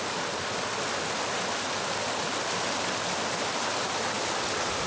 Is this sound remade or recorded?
recorded